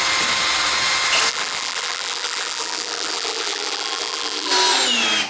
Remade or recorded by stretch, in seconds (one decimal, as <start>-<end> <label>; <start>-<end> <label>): 0.0-1.3 recorded; 1.3-4.5 remade; 4.5-5.3 recorded